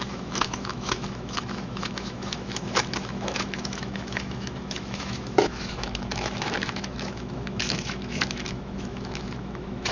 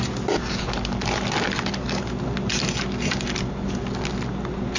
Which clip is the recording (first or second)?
second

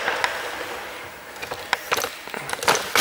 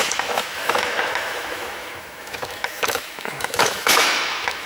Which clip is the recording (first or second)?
first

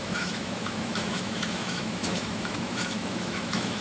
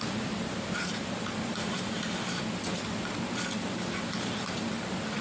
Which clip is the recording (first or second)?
second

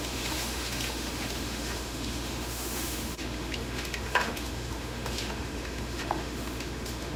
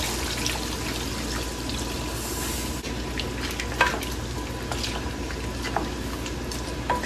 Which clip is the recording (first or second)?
second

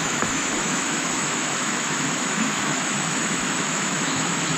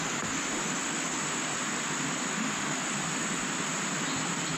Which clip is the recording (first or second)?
second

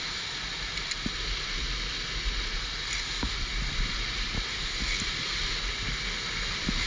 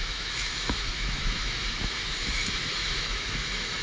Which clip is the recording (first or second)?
first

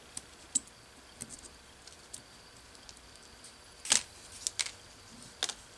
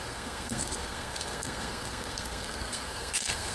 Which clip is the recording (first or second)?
first